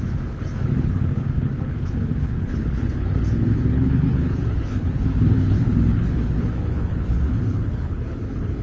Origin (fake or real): fake